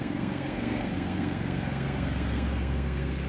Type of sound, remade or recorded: remade